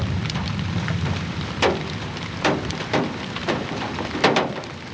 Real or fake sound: fake